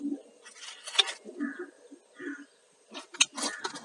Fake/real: real